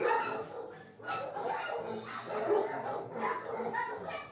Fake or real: real